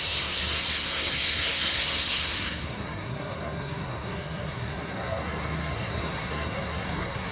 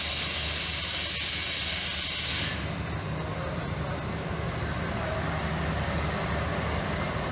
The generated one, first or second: first